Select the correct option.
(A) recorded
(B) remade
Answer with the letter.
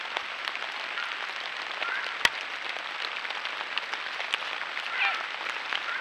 A